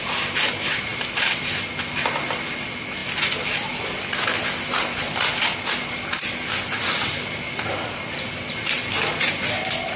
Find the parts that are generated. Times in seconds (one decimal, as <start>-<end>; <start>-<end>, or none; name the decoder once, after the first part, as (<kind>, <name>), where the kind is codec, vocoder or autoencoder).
0.9-1.4 (vocoder, BigVGAN v2)